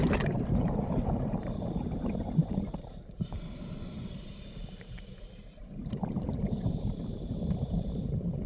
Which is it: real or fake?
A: fake